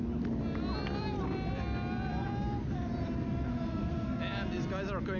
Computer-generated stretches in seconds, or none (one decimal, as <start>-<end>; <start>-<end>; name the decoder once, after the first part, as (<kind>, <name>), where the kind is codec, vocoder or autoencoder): 3.5-4.2 (codec, SNAC)